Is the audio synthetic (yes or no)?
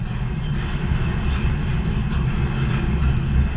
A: no